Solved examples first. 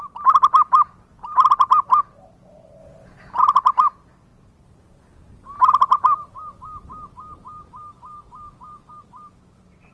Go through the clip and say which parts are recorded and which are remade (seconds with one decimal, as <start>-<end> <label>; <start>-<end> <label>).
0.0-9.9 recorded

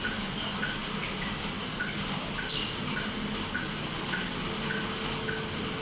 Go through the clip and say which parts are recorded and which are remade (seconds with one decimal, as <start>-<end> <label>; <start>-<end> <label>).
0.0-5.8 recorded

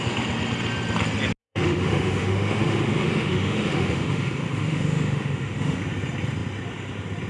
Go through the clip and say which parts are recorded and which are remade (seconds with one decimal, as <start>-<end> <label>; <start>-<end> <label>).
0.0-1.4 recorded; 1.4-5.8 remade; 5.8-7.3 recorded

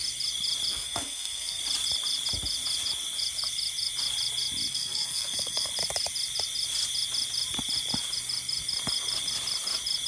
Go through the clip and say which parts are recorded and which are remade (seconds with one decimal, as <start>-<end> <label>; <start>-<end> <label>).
0.0-0.7 recorded; 0.7-1.6 remade; 1.6-4.7 recorded; 4.7-5.7 remade; 5.7-10.1 recorded

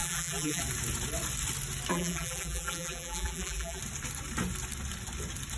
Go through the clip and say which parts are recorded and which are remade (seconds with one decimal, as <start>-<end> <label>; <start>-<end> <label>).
0.0-0.6 remade; 0.6-1.9 recorded; 1.9-3.8 remade; 3.8-5.6 recorded